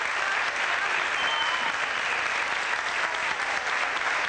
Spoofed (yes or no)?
no